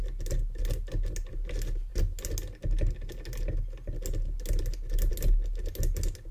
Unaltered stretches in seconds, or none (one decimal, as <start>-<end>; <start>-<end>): 0.0-6.3